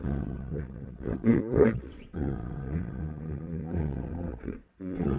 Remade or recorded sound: remade